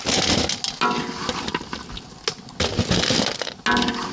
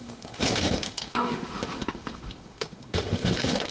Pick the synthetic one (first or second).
second